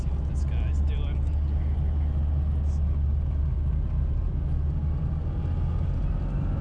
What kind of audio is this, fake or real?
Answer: real